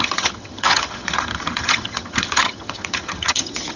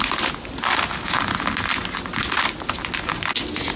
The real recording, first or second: second